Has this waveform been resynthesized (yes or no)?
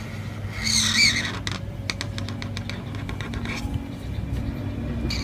no